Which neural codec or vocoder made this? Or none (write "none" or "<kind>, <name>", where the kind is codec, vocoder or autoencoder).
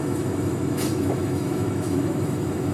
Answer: autoencoder, DAC-VAE